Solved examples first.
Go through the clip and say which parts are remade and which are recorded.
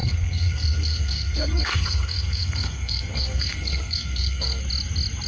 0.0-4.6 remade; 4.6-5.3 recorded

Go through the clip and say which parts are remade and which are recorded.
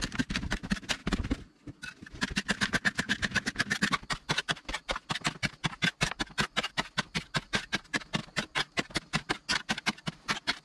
0.0-10.6 recorded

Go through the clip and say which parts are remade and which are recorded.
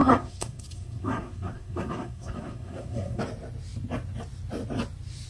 0.0-3.2 remade; 3.2-5.3 recorded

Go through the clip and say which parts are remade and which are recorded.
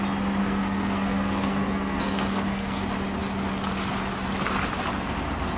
0.0-0.4 recorded; 0.4-2.8 remade; 2.8-5.6 recorded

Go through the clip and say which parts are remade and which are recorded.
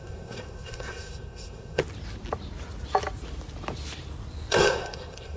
0.0-1.8 remade; 1.8-4.5 recorded; 4.5-5.4 remade